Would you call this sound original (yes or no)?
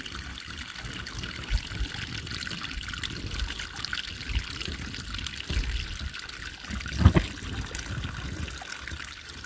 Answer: yes